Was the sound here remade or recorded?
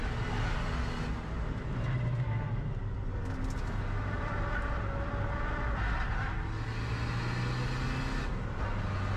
recorded